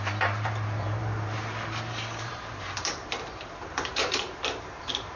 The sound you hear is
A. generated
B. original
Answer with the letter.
A